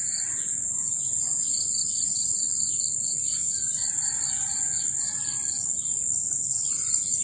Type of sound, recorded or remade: recorded